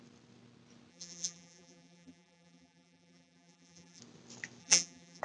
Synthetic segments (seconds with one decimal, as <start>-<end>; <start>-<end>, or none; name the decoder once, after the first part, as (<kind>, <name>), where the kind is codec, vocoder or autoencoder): 0.9-4.0 (vocoder, BigVGAN v2); 4.6-5.2